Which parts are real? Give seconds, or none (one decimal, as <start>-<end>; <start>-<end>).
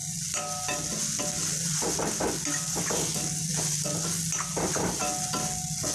0.0-5.9